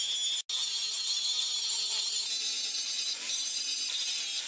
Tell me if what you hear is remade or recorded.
recorded